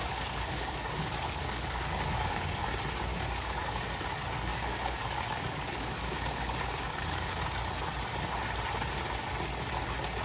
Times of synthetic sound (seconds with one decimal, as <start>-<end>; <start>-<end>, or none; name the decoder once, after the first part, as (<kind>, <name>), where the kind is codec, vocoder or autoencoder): 0.0-2.6 (codec, DAC); 3.1-3.8; 4.5-7.4